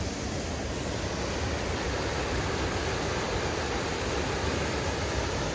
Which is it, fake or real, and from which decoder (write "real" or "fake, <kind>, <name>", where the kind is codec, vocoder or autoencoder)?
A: real